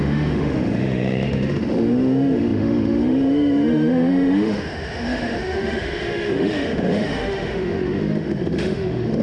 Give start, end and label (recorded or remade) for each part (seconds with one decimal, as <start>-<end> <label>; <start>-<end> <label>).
0.0-9.2 remade